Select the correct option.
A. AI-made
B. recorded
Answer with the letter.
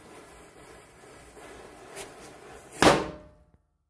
B